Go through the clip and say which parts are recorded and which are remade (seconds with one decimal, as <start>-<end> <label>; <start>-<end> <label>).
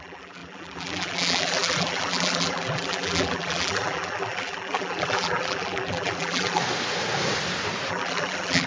0.0-6.6 remade; 6.6-7.9 recorded; 7.9-8.7 remade